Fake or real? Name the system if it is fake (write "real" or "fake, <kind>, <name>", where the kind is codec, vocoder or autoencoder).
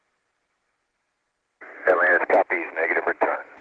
fake, vocoder, BigVGAN v2